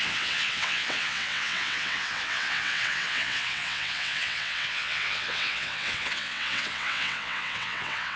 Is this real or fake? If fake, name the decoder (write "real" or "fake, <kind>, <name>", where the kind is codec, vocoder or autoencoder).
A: fake, vocoder, WaveNeXt